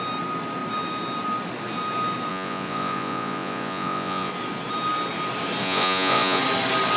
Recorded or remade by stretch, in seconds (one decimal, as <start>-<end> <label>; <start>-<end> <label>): 0.0-2.3 recorded; 2.3-4.3 remade; 4.3-5.6 recorded; 5.6-6.4 remade; 6.4-7.0 recorded